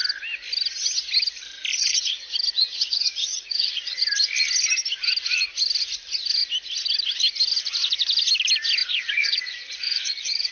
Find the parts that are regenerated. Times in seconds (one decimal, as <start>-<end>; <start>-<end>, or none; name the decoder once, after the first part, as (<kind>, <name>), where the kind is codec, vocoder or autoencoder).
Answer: 1.7-2.2 (vocoder, Vocos); 2.6-4.0; 8.8-10.5